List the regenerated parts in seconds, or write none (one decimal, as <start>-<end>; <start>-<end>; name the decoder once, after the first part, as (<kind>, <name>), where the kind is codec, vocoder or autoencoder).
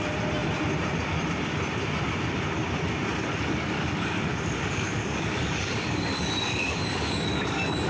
3.2-7.9 (codec, DAC)